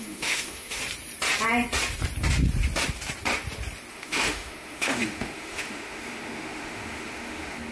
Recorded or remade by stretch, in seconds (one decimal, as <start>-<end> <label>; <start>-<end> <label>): 0.0-0.8 remade; 0.8-3.9 recorded; 3.9-7.7 remade